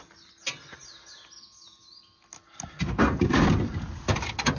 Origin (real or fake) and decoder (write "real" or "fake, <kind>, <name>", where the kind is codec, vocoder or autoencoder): real